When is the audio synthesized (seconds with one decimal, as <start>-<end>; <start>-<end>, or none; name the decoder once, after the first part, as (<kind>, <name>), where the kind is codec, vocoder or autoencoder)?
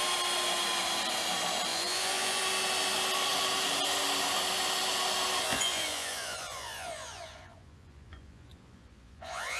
1.7-2.4 (vocoder, Vocos); 5.5-9.6